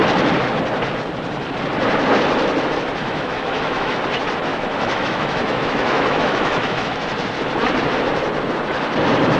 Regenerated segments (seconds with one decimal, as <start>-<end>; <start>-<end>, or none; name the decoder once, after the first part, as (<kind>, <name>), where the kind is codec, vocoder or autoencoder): 3.0-4.0 (autoencoder, DAC-VAE); 4.5-7.0